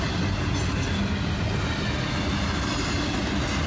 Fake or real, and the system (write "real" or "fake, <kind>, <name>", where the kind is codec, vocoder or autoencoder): real